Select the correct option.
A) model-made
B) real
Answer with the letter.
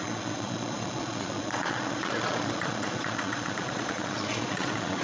A